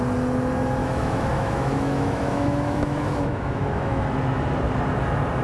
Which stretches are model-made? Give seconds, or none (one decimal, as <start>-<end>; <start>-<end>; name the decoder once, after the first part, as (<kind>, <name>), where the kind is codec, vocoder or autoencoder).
0.8-4.0 (autoencoder, DAC-VAE)